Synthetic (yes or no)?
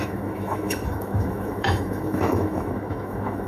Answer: yes